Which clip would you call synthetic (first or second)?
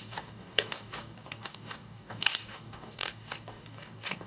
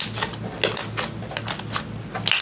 first